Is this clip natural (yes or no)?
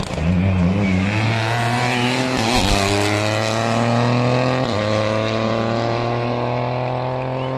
yes